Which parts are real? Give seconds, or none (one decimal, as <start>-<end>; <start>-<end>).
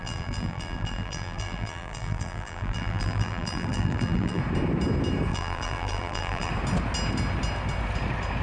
4.4-5.3; 6.5-8.4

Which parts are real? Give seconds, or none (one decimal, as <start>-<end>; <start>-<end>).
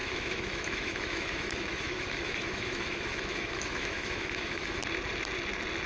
4.8-5.9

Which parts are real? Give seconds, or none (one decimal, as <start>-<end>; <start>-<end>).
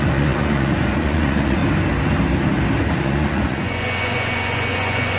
1.6-2.8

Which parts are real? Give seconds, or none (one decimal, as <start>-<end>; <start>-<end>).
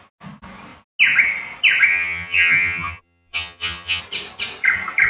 0.0-1.9; 4.0-5.1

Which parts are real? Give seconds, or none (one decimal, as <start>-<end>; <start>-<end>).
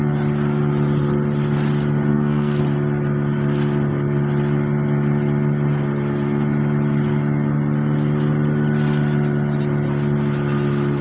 0.0-2.1; 2.6-11.0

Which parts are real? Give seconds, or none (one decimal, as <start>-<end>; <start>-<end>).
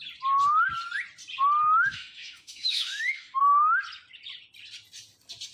0.0-1.9; 3.4-5.5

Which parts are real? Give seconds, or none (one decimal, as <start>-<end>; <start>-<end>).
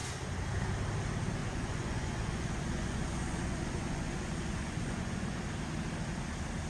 0.0-1.4; 5.4-6.7